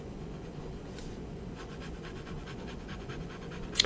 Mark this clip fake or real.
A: fake